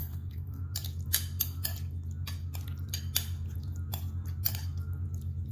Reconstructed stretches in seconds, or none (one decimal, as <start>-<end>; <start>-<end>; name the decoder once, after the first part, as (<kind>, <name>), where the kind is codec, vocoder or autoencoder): 0.0-0.6 (codec, SNAC)